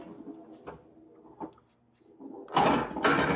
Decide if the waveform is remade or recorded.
recorded